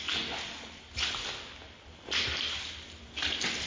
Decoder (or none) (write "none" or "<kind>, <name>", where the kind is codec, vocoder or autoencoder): none